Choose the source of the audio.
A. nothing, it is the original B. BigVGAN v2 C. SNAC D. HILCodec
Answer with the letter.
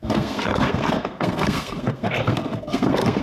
C